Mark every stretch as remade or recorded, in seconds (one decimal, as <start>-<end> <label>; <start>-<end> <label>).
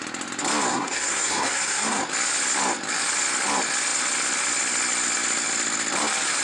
0.0-0.7 recorded; 0.7-2.0 remade; 2.0-6.4 recorded